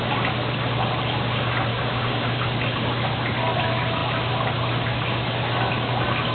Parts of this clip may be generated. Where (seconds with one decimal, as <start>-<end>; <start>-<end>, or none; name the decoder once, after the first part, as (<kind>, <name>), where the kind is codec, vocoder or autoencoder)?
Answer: 1.7-2.4 (codec, DAC)